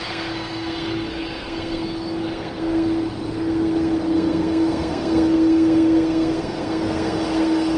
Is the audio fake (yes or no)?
yes